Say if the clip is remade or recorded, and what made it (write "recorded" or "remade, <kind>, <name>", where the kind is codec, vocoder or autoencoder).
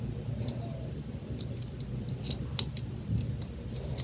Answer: recorded